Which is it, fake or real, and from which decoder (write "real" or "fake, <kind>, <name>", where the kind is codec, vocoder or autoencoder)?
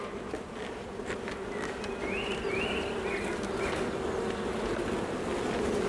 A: real